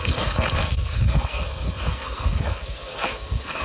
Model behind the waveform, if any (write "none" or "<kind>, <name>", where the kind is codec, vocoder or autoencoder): codec, SNAC